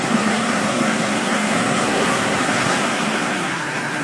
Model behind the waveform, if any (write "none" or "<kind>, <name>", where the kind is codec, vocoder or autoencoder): codec, SNAC